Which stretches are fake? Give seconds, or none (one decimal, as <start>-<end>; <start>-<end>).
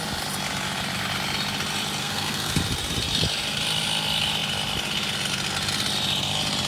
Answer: 2.0-2.5